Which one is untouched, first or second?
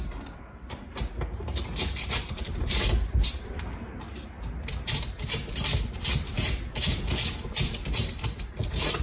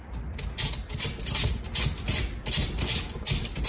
second